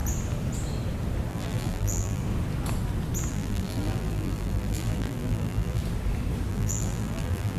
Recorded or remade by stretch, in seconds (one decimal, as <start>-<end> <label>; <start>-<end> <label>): 0.0-1.3 recorded; 1.3-2.2 remade; 2.2-3.3 recorded; 3.3-5.8 remade; 5.8-6.5 recorded; 6.5-7.6 remade